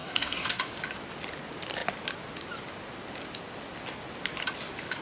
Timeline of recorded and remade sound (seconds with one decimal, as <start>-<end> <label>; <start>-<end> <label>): 0.0-0.6 remade; 0.6-5.0 recorded